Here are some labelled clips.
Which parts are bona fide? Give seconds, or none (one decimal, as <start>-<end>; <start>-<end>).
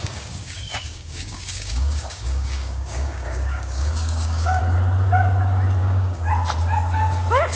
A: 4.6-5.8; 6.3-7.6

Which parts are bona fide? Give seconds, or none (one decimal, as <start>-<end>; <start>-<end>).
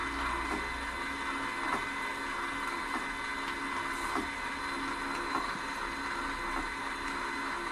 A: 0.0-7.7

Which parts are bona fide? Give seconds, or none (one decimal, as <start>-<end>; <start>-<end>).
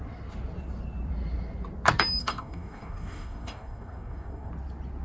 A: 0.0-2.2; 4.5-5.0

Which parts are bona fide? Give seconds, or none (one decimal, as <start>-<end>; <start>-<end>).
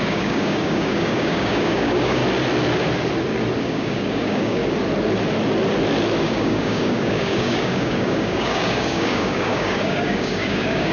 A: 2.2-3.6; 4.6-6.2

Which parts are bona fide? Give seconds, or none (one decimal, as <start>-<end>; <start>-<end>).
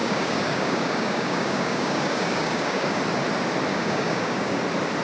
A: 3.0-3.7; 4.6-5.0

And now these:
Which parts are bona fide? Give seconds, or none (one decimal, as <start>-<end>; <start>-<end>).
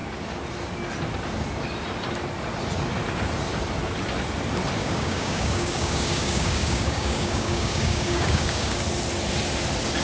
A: 0.0-4.8; 8.8-10.0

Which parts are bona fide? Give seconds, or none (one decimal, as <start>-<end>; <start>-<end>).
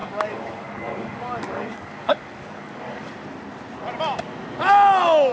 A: 3.1-5.3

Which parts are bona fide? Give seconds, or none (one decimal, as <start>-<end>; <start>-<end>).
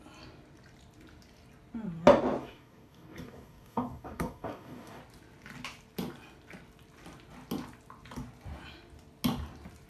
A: 0.0-2.4; 5.0-9.9